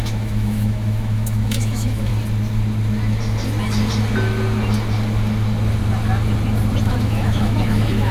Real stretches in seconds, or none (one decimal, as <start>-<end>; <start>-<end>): 2.1-6.8